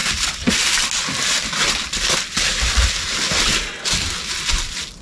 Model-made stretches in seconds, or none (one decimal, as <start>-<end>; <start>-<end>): none